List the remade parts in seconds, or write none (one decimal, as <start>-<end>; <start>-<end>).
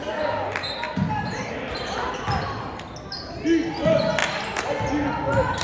0.6-1.5